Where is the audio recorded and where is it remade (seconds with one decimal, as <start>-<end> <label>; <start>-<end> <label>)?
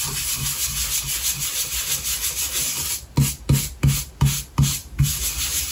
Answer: 0.0-4.8 recorded; 4.8-5.7 remade